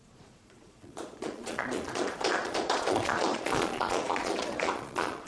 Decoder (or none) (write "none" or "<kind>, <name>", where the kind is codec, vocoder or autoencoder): vocoder, Vocos